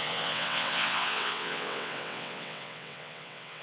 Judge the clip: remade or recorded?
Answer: remade